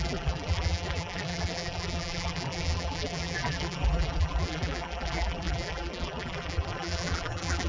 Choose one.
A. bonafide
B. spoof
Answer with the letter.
B